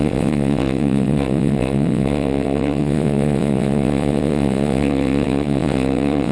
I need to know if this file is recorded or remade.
remade